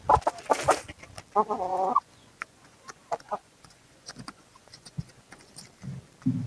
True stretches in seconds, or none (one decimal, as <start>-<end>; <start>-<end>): 0.0-1.7; 5.5-6.5